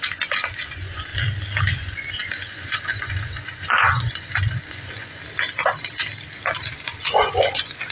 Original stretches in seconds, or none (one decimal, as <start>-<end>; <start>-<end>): 1.1-1.6; 5.2-6.7